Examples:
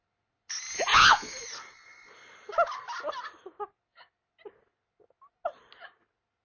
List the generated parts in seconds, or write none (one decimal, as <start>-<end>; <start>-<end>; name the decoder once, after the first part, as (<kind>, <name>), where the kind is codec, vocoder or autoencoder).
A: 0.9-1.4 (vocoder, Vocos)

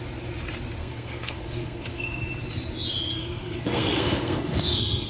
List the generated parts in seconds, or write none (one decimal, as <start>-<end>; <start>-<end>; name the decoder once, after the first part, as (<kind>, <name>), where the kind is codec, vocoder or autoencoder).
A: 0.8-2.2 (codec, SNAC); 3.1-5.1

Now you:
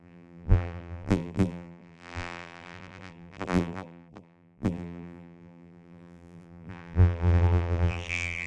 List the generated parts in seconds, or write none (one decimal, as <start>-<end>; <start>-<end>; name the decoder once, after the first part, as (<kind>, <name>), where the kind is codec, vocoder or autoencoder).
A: 0.0-8.5 (vocoder, BigVGAN v2)

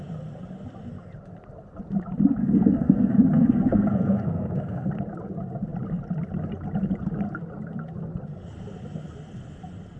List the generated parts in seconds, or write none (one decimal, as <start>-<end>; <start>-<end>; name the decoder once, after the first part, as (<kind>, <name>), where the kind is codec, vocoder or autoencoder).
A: 2.4-4.9 (codec, SNAC)